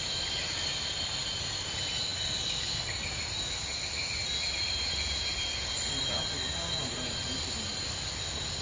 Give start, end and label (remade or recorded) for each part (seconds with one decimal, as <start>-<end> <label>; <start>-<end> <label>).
0.0-8.6 recorded